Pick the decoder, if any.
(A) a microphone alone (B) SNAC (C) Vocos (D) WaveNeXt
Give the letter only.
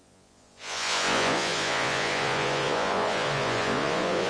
C